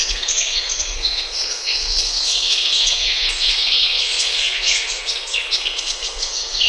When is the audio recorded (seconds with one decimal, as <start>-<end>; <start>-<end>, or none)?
none